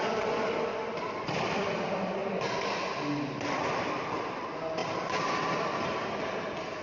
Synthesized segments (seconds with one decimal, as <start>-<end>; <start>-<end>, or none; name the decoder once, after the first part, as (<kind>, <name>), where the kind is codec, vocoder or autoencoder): 0.0-4.8 (vocoder, BigVGAN v2)